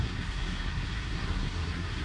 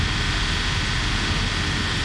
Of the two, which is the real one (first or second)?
second